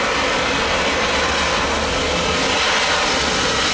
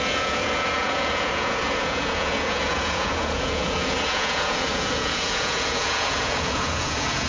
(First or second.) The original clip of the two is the first